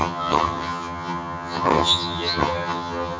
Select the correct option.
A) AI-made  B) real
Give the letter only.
A